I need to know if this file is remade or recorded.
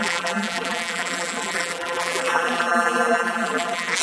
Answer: remade